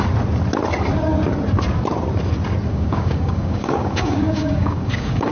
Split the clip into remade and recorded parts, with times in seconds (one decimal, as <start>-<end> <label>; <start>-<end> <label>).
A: 0.0-2.7 recorded; 2.7-5.3 remade